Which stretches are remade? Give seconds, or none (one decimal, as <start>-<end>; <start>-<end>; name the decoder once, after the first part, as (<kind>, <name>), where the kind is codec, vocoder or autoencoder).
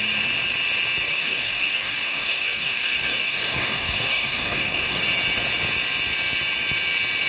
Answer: 1.1-5.0 (codec, DAC)